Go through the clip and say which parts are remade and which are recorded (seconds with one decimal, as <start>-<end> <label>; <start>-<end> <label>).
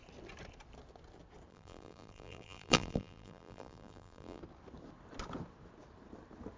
0.0-1.5 recorded; 1.5-4.4 remade; 4.4-6.6 recorded